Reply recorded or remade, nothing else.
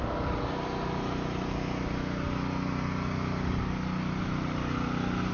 recorded